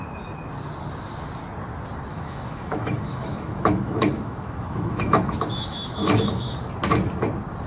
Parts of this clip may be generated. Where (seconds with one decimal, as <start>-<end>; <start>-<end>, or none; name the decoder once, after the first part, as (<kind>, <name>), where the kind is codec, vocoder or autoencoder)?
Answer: 2.1-6.7 (autoencoder, DAC-VAE)